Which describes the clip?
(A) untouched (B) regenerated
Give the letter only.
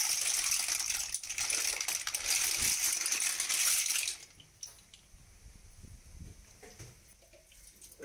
A